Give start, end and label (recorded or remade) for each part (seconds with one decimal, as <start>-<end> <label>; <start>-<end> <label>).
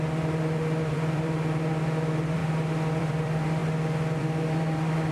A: 0.0-2.4 remade; 2.4-3.0 recorded; 3.0-3.6 remade; 3.6-4.2 recorded; 4.2-5.1 remade